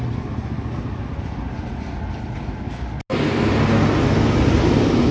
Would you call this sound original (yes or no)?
yes